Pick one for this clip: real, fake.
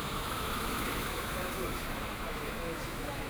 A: fake